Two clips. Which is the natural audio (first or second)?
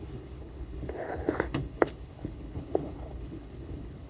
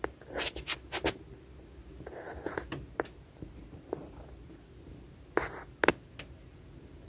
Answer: second